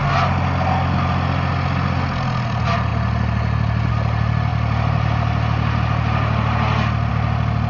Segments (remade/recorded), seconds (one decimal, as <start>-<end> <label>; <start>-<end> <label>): 0.0-7.7 recorded